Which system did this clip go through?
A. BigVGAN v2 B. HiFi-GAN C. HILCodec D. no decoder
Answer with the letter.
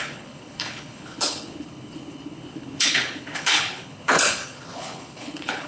C